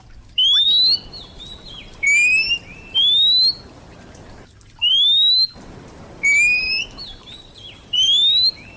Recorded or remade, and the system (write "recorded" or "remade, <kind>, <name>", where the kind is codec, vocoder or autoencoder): recorded